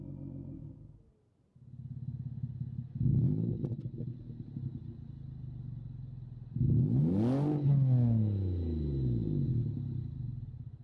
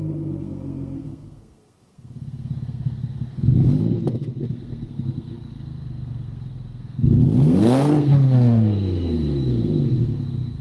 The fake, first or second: second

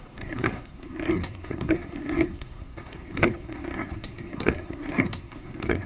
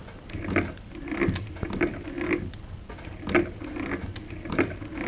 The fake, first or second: first